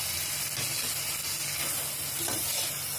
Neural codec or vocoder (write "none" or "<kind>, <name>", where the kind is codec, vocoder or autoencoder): none